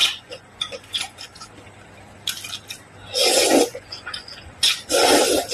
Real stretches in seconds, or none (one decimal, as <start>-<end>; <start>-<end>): 1.5-3.2; 5.0-5.5